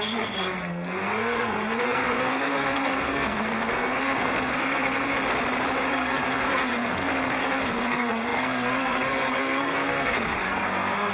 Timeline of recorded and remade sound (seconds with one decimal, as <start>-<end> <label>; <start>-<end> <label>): 0.0-5.1 remade; 5.1-5.9 recorded; 5.9-11.1 remade